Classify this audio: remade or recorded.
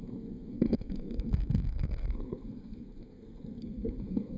remade